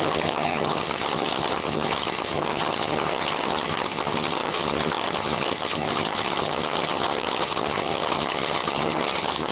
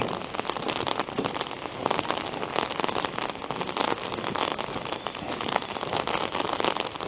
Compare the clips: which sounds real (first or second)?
second